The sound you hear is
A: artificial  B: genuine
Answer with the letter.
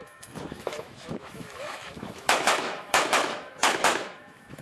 A